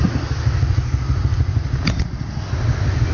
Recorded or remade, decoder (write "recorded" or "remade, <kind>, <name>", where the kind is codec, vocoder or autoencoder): recorded